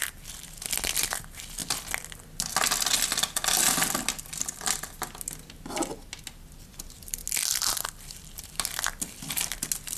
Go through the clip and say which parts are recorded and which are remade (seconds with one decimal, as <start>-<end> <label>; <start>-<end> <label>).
0.0-10.0 recorded